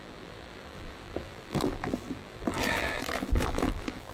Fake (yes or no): yes